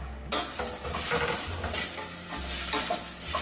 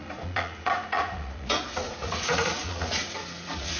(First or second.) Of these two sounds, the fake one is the second